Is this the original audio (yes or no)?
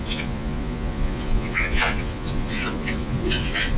no